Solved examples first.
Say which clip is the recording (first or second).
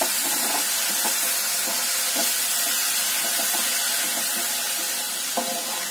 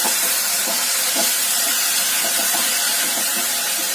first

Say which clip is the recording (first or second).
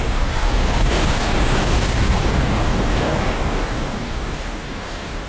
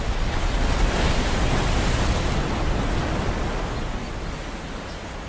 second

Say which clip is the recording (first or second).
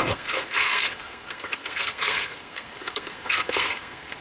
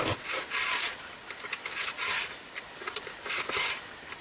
second